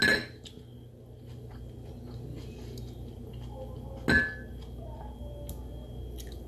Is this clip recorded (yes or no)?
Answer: yes